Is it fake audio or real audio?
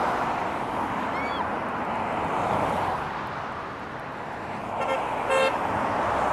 real